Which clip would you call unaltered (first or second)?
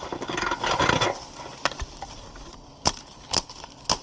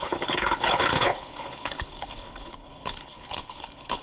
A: first